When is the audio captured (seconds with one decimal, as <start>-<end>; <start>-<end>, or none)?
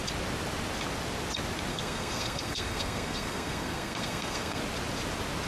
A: 0.0-1.7; 4.6-5.5